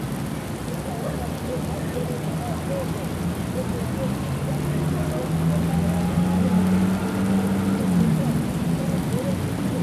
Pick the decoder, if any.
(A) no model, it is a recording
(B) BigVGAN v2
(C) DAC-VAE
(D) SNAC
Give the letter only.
A